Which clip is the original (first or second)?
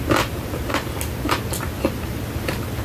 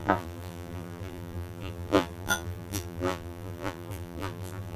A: first